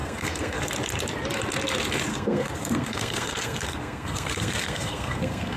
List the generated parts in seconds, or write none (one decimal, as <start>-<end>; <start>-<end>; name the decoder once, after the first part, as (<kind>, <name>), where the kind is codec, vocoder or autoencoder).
0.0-0.6 (codec, SNAC); 2.1-5.6